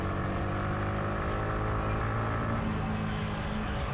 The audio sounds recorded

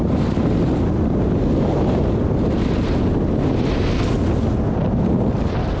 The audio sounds recorded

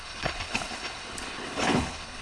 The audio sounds remade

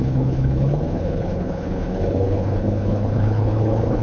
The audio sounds remade